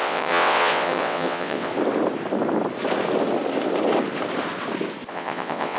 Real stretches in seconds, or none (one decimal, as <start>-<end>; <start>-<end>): 1.7-5.1